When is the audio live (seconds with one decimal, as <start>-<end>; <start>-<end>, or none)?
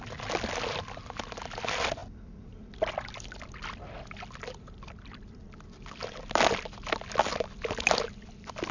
0.0-8.7